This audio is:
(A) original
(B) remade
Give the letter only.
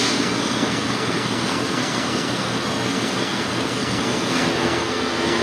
B